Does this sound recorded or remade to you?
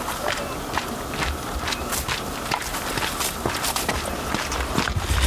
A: recorded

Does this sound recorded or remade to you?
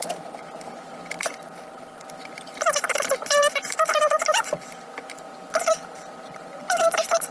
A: remade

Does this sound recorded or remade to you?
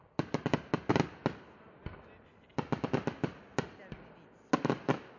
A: recorded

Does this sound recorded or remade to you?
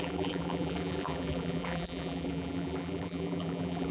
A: remade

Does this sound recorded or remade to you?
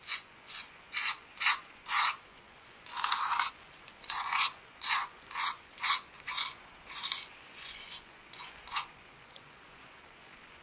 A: remade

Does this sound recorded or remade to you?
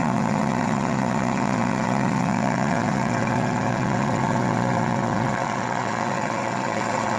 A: remade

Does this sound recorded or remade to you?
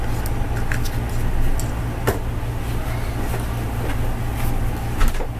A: recorded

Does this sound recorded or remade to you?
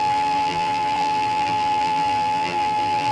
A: remade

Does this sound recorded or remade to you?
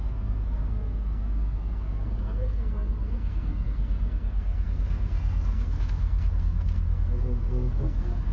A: remade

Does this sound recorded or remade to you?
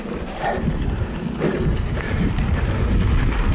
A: recorded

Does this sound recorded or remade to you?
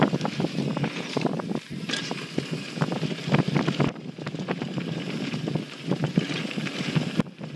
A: recorded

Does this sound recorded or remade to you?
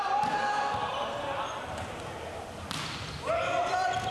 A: recorded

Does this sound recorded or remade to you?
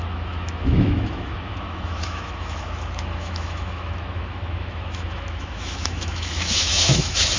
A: remade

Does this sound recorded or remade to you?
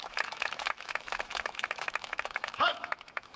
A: remade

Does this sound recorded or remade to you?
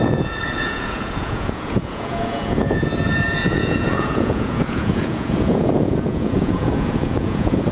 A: remade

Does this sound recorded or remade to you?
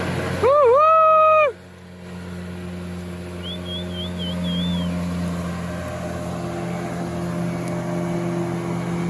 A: recorded